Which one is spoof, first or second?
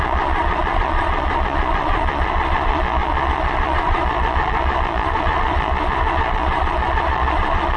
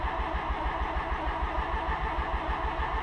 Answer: first